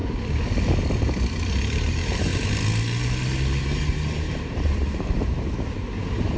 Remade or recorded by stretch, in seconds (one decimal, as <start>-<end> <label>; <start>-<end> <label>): 0.0-0.9 recorded; 0.9-2.3 remade; 2.3-3.6 recorded; 3.6-6.4 remade

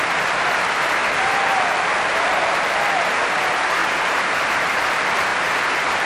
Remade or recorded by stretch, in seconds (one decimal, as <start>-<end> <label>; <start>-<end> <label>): 0.0-1.0 recorded; 1.0-1.7 remade; 1.7-3.8 recorded; 3.8-4.8 remade; 4.8-5.3 recorded; 5.3-6.1 remade